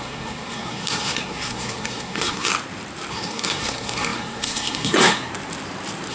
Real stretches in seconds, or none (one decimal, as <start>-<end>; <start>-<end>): 2.5-3.1; 5.3-6.1

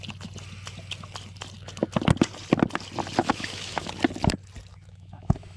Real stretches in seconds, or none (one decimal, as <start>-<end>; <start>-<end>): 0.0-3.2; 3.9-4.7

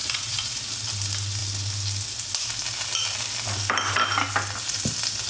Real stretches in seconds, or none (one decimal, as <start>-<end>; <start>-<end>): 0.6-5.3